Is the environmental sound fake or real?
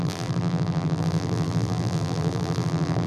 fake